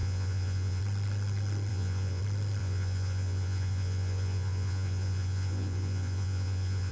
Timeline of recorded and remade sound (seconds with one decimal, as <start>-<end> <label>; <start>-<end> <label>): 0.0-0.8 remade; 0.8-1.7 recorded; 1.7-2.2 remade; 2.2-2.6 recorded; 2.6-6.9 remade